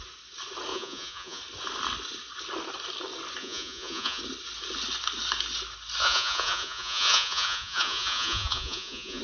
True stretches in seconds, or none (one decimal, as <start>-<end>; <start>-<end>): 0.0-0.7; 1.4-3.4; 4.2-6.0

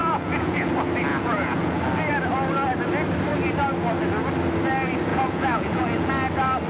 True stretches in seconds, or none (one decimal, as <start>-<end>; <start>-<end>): 0.7-1.1; 1.8-5.1; 6.1-6.7

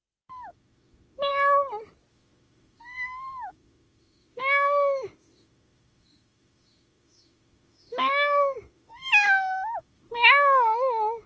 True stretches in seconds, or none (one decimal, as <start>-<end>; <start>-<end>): 1.3-2.1

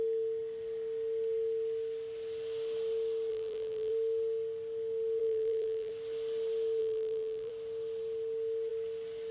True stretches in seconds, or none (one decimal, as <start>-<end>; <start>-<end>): 0.0-3.3; 3.9-5.2; 5.9-6.8; 7.5-9.3

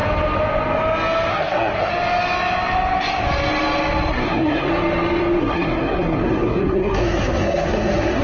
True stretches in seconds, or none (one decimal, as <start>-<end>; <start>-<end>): 0.0-1.3; 1.9-4.1; 4.7-5.4

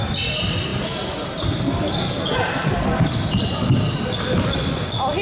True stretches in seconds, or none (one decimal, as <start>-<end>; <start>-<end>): 0.0-5.2

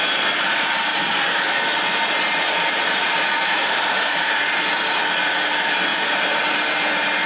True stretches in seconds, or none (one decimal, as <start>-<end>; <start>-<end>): 0.0-0.9; 5.0-5.9